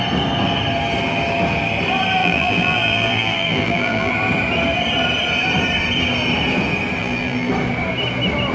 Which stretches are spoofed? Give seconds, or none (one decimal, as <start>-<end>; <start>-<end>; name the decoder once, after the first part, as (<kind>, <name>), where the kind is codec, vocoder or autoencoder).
2.2-4.1 (vocoder, BigVGAN v2); 7.0-7.5